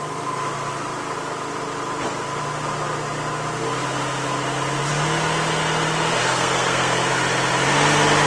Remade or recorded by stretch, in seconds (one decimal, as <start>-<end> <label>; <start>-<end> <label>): 0.0-6.2 recorded; 6.2-7.1 remade; 7.1-8.3 recorded